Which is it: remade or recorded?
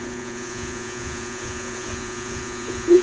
remade